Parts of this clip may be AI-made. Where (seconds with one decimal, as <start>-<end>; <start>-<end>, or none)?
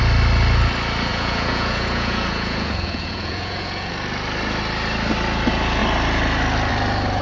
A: 1.1-3.9